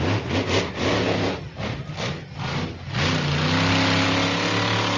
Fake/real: real